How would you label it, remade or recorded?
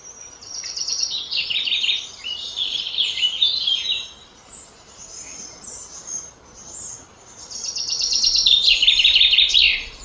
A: recorded